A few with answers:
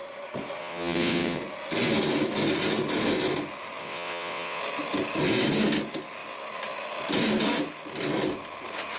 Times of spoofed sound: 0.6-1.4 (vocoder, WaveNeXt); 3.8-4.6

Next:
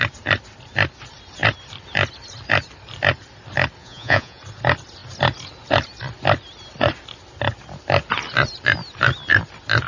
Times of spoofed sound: 3.8-4.4 (vocoder, Vocos)

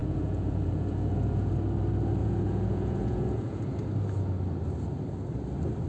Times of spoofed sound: 0.0-1.5 (vocoder, Vocos); 2.2-3.6

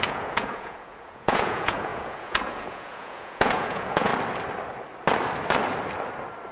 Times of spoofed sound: 0.0-4.1 (vocoder, Vocos)